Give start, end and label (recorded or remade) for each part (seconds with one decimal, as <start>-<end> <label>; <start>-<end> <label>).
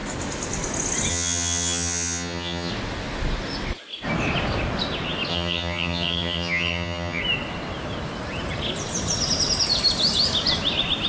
0.0-1.1 recorded; 1.1-2.7 remade; 2.7-5.3 recorded; 5.3-7.2 remade; 7.2-11.1 recorded